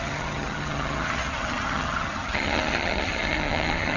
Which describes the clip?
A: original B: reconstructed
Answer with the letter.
B